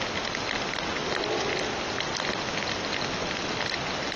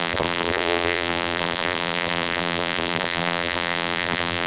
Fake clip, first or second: second